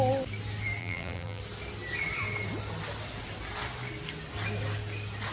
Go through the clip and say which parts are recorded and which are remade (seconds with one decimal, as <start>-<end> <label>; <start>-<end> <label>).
0.0-0.8 recorded; 0.8-1.4 remade; 1.4-5.3 recorded